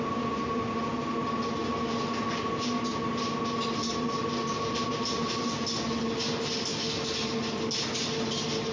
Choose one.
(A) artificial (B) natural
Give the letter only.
B